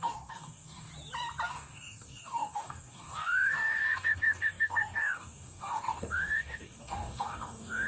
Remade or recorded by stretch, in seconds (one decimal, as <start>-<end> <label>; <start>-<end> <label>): 0.0-0.9 remade; 0.9-1.5 recorded; 1.5-7.9 remade